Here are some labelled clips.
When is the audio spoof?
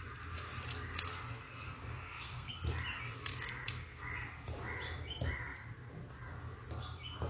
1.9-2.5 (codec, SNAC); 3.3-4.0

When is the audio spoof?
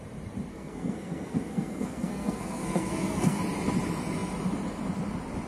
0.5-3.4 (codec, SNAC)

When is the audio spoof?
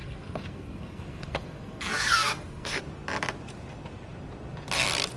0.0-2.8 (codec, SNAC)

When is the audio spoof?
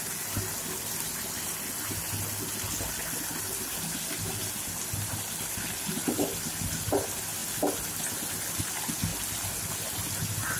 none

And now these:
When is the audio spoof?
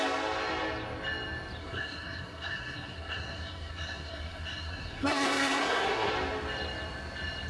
1.6-6.1 (codec, SNAC)